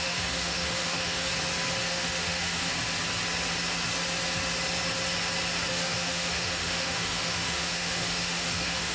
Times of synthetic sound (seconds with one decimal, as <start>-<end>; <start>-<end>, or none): 0.0-1.3; 1.9-2.7; 5.7-8.9